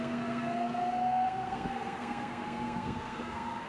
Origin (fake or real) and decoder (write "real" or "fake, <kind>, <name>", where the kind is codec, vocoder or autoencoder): fake, codec, SNAC